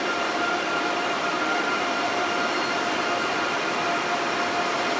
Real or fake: fake